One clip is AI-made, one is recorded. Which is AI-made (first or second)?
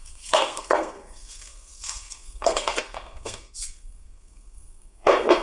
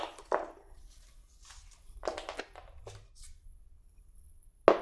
first